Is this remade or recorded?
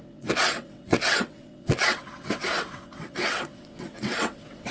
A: remade